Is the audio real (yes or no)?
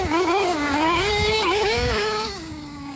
no